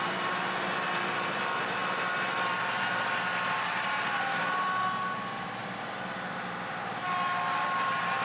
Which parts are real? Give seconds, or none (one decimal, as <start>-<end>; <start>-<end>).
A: 1.8-2.6

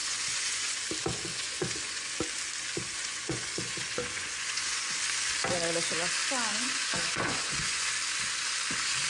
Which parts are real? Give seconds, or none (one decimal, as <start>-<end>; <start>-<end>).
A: 0.8-1.3; 2.1-3.0; 5.0-6.5; 7.9-9.1

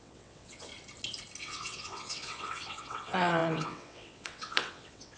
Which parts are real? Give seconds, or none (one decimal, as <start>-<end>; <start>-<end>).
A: 0.7-1.4

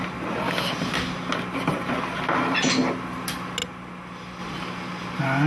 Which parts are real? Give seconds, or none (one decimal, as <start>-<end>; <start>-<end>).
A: 0.0-5.5